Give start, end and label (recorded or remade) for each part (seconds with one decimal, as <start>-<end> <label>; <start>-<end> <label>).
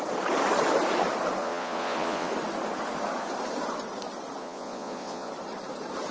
0.0-1.4 recorded; 1.4-2.3 remade; 2.3-4.4 recorded; 4.4-5.3 remade; 5.3-6.1 recorded